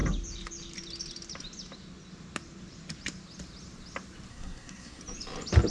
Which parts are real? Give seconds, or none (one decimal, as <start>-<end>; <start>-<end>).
0.0-4.3; 5.0-5.7